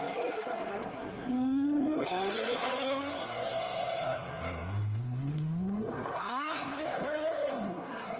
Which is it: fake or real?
fake